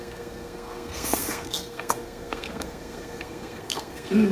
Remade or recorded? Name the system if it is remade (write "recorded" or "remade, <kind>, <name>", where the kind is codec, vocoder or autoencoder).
remade, codec, SNAC